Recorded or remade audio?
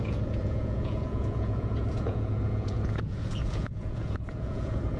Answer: remade